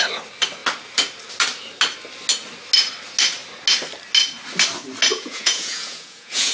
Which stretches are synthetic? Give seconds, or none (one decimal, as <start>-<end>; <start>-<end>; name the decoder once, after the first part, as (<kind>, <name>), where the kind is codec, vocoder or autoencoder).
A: 5.1-6.5 (vocoder, Vocos)